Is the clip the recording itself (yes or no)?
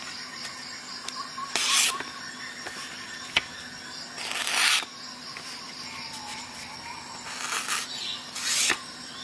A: yes